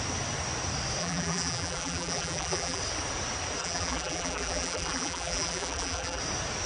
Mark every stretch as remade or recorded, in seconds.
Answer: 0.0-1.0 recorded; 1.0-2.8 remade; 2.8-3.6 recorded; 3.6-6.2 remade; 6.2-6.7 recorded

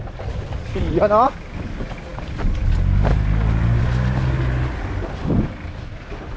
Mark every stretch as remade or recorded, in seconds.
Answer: 0.0-6.4 recorded

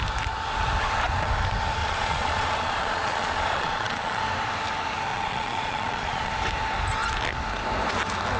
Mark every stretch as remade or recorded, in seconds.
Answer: 0.0-1.8 recorded; 1.8-4.2 remade; 4.2-5.1 recorded; 5.1-6.3 remade; 6.3-8.4 recorded

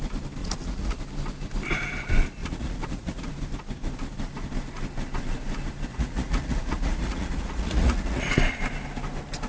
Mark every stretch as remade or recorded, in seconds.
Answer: 0.0-0.4 recorded; 0.4-1.0 remade; 1.0-2.4 recorded; 2.4-3.3 remade; 3.3-5.9 recorded; 5.9-8.3 remade; 8.3-9.5 recorded

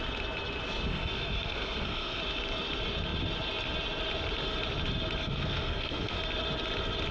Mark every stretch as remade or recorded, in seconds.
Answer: 0.0-0.9 recorded; 0.9-2.2 remade; 2.2-5.2 recorded; 5.2-6.2 remade; 6.2-7.1 recorded

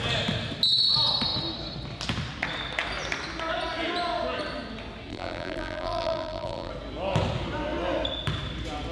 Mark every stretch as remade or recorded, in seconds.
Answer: 0.0-5.1 recorded; 5.1-6.7 remade; 6.7-8.9 recorded

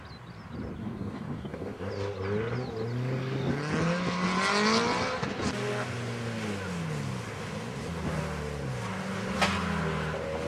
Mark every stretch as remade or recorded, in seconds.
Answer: 0.0-0.8 recorded; 0.8-1.9 remade; 1.9-10.5 recorded